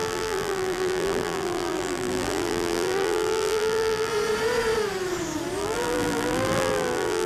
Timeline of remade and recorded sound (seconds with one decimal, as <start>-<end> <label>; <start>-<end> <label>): 0.0-4.1 remade; 4.1-5.6 recorded; 5.6-7.3 remade